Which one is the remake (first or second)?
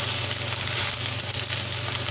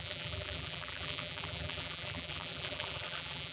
second